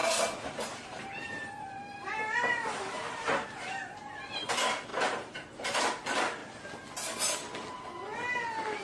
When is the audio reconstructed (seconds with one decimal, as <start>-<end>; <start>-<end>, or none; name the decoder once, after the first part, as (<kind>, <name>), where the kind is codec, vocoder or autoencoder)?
0.0-4.5 (vocoder, BigVGAN v2); 4.9-5.8